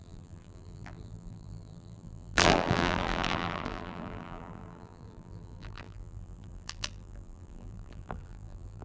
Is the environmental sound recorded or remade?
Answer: remade